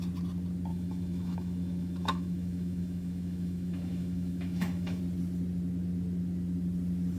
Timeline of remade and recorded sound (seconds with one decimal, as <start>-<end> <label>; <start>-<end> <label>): 0.0-0.7 recorded; 0.7-5.0 remade; 5.0-7.2 recorded